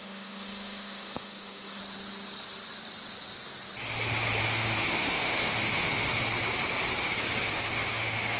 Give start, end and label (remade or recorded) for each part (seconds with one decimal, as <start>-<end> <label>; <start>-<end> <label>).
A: 0.0-1.8 remade; 1.8-4.4 recorded; 4.4-6.2 remade; 6.2-7.4 recorded; 7.4-8.4 remade